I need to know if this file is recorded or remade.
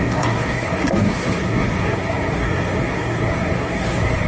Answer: remade